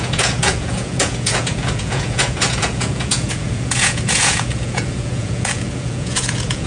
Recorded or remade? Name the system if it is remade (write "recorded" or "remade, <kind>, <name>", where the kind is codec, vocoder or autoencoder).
remade, vocoder, Vocos